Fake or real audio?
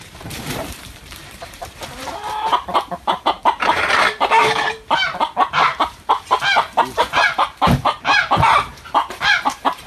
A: fake